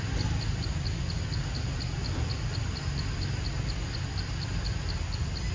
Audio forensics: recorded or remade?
recorded